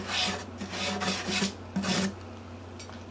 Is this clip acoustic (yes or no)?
yes